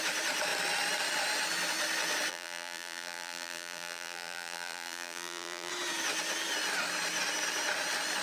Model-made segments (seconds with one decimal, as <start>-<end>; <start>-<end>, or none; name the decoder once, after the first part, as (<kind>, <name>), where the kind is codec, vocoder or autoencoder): 2.3-5.7 (vocoder, BigVGAN v2)